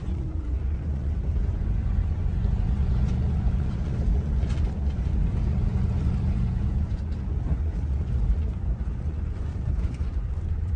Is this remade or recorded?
remade